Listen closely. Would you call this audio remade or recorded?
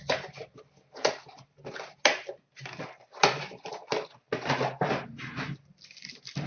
recorded